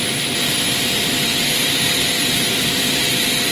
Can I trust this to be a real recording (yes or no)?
yes